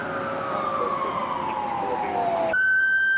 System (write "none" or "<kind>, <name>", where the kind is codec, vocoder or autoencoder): none